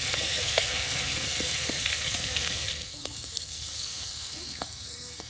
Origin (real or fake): fake